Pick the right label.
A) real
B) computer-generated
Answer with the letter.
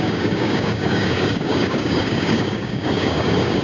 B